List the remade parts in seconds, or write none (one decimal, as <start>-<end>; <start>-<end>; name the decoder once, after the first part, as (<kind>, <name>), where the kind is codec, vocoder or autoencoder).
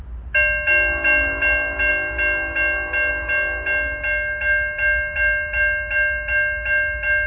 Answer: none